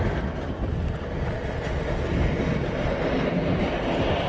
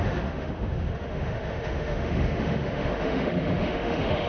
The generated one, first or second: second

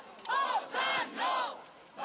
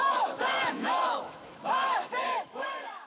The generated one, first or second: second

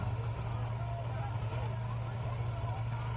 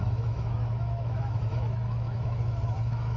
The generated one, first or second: second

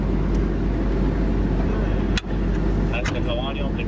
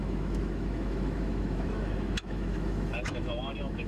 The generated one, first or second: second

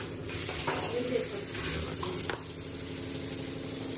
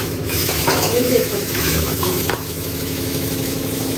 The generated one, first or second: second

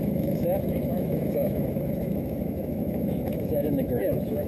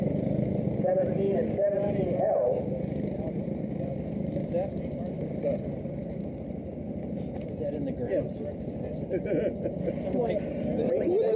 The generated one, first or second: first